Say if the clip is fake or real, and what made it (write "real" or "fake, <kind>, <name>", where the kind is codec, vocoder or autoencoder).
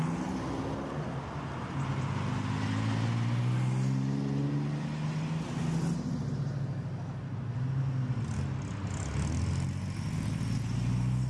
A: real